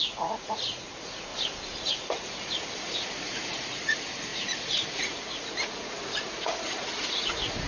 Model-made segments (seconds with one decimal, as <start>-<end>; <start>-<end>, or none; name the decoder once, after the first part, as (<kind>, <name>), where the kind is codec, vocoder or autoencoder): 0.0-1.3 (vocoder, Vocos); 1.9-7.7